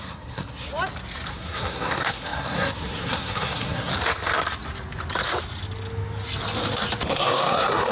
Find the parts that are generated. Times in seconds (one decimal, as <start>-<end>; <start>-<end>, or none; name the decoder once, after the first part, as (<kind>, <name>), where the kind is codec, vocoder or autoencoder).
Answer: 0.0-0.7 (codec, SNAC); 1.3-3.9; 7.1-7.9